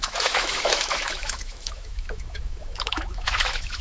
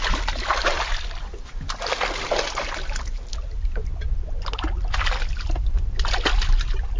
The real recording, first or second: second